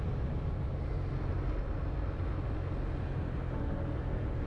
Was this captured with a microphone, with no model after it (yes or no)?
yes